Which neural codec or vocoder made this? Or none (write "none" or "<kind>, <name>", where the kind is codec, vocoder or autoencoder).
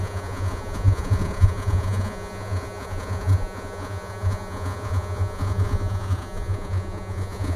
vocoder, Vocos